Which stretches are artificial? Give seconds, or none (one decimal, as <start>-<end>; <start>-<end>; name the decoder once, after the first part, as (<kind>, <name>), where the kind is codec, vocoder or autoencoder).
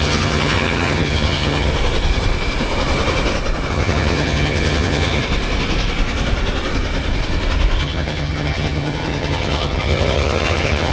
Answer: 0.0-1.7 (vocoder, HiFi-GAN); 3.7-5.2; 7.8-10.9